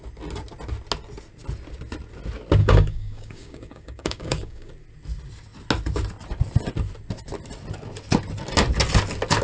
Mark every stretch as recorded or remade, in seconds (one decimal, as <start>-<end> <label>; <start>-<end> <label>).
0.0-2.6 recorded; 2.6-4.7 remade; 4.7-9.4 recorded